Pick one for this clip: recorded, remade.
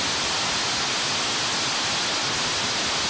recorded